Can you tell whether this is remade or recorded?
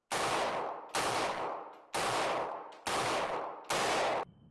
recorded